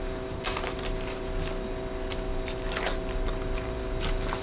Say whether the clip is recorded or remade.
recorded